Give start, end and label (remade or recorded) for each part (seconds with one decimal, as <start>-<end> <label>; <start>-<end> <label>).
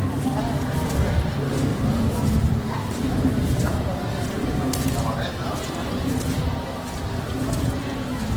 0.0-1.7 recorded; 1.7-3.7 remade; 3.7-8.4 recorded